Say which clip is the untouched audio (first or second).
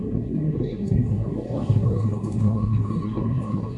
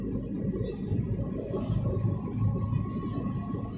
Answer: second